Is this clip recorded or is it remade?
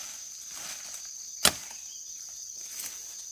recorded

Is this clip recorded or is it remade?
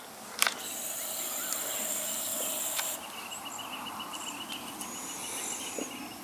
recorded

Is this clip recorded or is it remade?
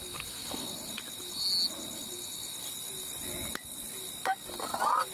recorded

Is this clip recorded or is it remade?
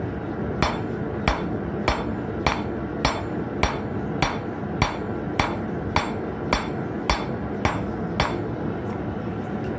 recorded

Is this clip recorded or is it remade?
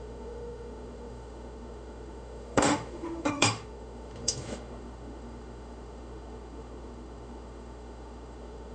remade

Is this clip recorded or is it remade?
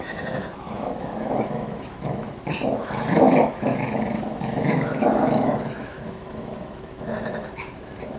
remade